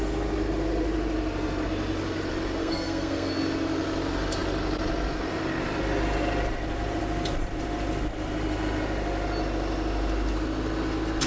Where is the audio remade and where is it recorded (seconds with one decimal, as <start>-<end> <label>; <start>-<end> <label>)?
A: 0.0-2.6 recorded; 2.6-3.3 remade; 3.3-11.3 recorded